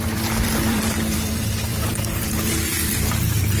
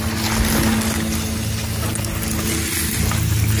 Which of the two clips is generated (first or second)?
first